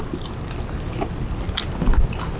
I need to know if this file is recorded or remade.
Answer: recorded